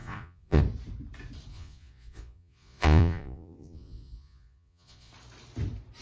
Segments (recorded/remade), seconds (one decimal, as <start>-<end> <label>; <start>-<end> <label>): 0.0-0.6 remade; 0.6-1.5 recorded; 1.5-5.1 remade; 5.1-6.0 recorded